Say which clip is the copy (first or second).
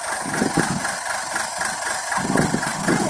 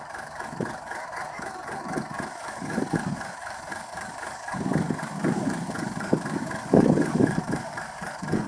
second